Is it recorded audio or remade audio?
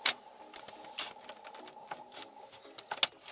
recorded